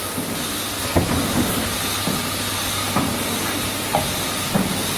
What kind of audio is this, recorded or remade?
recorded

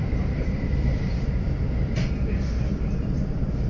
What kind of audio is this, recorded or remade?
remade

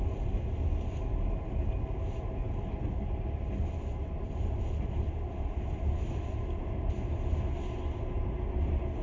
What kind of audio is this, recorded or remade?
recorded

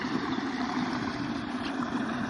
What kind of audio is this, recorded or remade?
remade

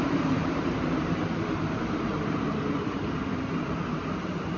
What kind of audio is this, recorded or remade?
remade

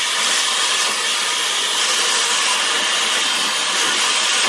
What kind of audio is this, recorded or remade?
recorded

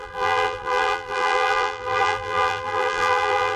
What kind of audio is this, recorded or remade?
remade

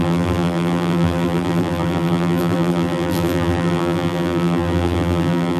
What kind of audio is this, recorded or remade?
remade